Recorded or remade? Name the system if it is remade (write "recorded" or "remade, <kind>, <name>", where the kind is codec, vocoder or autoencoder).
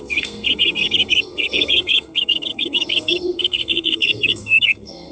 remade, codec, SNAC